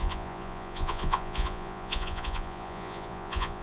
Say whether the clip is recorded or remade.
remade